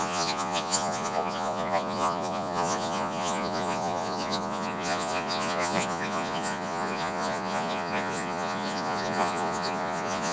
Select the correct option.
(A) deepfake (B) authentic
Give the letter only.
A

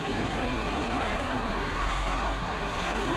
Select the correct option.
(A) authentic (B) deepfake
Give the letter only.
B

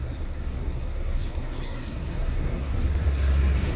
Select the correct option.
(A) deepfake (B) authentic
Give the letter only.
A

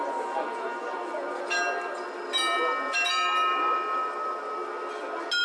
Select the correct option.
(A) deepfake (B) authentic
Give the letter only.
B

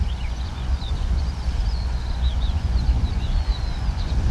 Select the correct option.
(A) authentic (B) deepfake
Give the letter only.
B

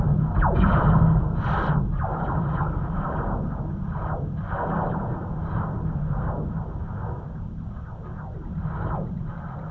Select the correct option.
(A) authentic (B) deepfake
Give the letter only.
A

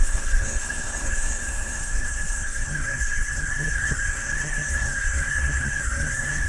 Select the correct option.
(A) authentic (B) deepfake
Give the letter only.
B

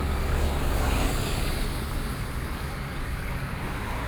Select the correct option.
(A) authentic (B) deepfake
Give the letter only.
B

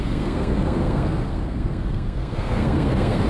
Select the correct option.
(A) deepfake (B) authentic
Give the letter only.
A